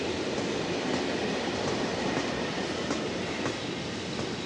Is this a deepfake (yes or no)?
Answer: no